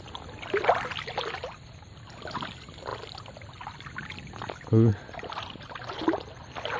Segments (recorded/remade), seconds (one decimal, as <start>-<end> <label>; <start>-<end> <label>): 0.0-4.9 recorded; 4.9-6.0 remade; 6.0-6.8 recorded